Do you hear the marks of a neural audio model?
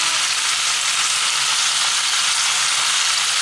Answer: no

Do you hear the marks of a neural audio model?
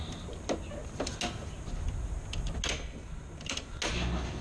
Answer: no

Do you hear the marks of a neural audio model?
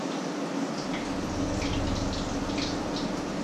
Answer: no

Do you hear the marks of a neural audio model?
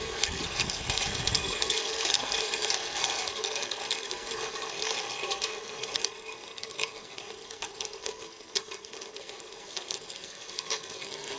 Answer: yes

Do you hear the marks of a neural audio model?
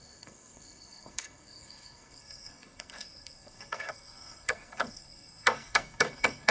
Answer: yes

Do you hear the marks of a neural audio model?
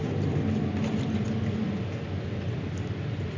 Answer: no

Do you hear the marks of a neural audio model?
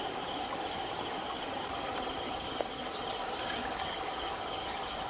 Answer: no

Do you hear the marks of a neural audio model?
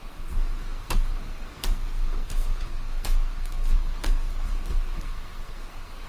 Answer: yes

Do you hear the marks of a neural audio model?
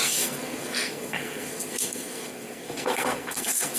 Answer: yes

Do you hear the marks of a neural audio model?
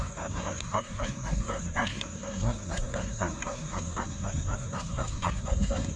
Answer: yes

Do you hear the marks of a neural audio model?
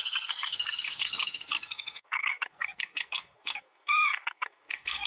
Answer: yes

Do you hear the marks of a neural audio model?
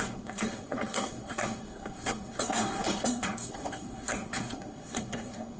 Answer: yes